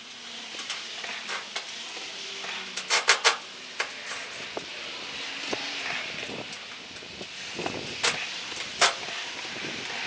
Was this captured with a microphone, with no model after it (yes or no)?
yes